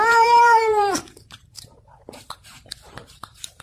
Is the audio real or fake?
fake